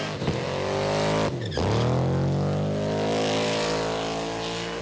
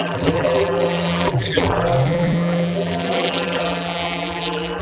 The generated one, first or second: second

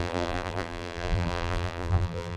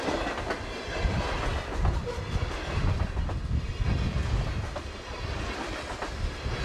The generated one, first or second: first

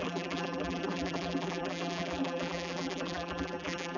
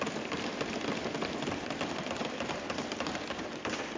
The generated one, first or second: first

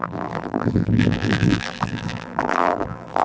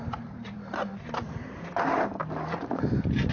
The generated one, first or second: first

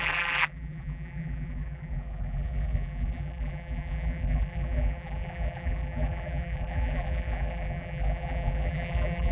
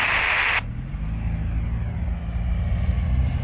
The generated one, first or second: first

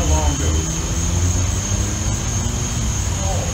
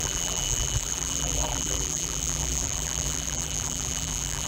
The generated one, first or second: second